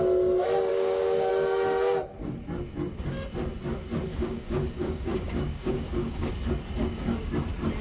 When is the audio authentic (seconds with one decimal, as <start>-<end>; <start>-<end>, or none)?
0.0-0.7; 1.3-4.1; 6.3-6.8; 7.3-7.8